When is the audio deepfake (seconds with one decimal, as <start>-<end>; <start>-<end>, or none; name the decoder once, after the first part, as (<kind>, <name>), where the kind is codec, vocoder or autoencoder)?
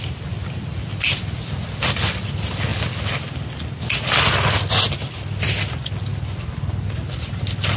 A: none